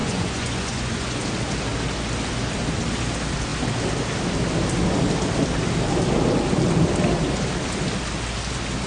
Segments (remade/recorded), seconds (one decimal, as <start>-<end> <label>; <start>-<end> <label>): 0.0-1.2 remade; 1.2-8.9 recorded